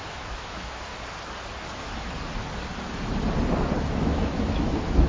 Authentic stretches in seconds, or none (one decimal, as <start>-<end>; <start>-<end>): 0.9-4.0